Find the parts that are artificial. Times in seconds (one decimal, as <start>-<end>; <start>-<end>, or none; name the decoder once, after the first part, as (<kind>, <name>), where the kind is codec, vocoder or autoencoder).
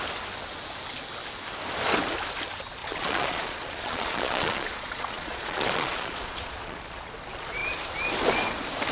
2.8-7.1 (vocoder, Vocos)